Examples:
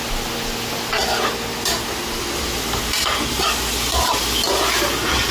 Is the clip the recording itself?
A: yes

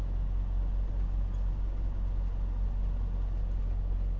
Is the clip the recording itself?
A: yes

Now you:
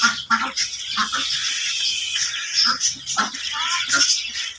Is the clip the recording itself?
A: yes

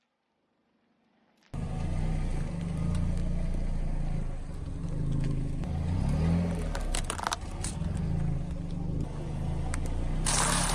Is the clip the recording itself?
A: yes